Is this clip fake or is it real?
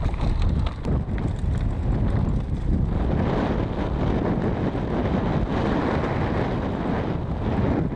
real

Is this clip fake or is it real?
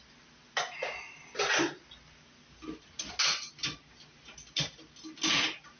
real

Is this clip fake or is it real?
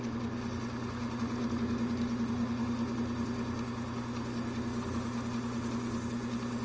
real